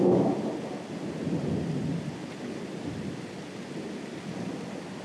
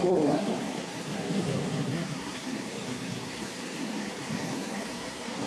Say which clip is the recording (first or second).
first